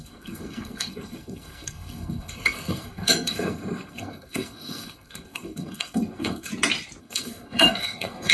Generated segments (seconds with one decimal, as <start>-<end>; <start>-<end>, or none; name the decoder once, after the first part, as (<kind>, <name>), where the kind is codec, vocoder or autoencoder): 0.0-6.5 (codec, SNAC); 7.0-8.3